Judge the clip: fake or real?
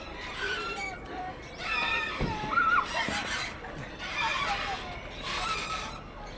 fake